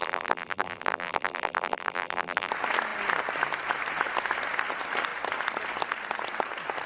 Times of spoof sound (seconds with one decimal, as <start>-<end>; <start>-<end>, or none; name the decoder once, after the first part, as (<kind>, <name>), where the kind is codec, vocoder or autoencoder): 0.0-2.5 (vocoder, BigVGAN v2)